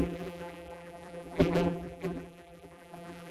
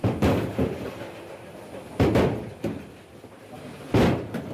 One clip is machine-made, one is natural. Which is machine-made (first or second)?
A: first